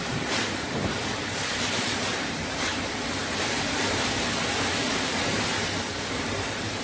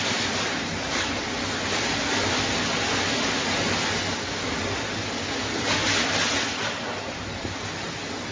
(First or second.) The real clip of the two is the second